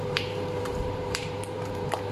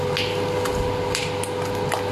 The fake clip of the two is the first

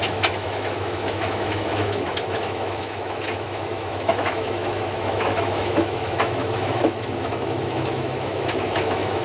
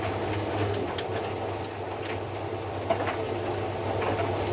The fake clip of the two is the first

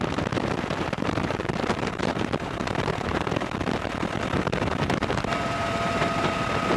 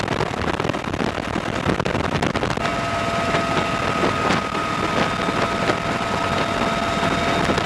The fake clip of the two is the first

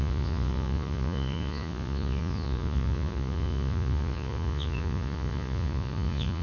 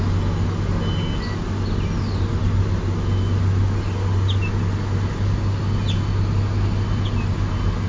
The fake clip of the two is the first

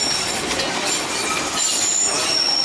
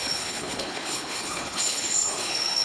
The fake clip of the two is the second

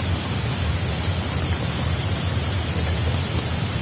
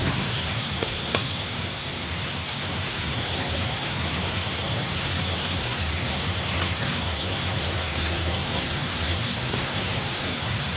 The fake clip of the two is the second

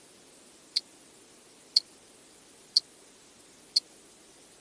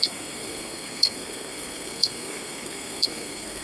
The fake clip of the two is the second